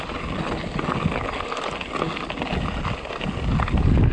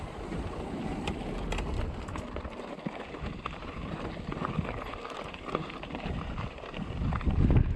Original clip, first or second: first